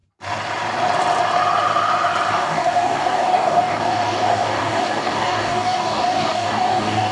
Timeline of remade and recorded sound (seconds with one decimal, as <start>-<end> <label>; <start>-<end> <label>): 0.0-2.3 recorded; 2.3-7.1 remade